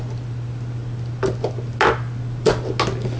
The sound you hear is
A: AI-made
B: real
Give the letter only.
B